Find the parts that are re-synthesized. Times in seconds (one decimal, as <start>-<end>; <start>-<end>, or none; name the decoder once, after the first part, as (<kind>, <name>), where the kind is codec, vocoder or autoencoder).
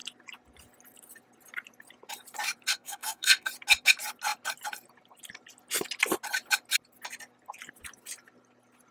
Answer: 2.7-3.5 (codec, SNAC)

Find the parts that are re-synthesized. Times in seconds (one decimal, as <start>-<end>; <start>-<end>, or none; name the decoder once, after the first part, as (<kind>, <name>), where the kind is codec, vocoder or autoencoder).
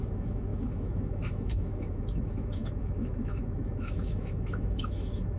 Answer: 0.0-5.4 (autoencoder, DAC-VAE)